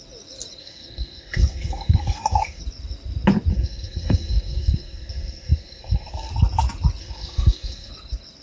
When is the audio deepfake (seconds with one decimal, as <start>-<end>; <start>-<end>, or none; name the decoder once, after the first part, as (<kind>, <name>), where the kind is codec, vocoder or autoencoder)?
0.6-2.6 (codec, SNAC); 3.5-6.3; 7.0-7.9